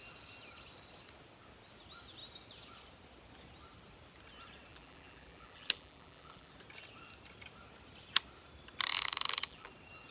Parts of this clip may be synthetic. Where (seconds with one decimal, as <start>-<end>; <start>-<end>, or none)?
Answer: 4.7-6.5; 8.9-9.7